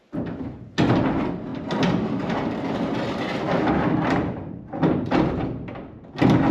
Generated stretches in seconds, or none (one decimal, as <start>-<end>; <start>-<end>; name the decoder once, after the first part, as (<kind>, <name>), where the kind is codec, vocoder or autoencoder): 1.5-5.4 (vocoder, BigVGAN v2)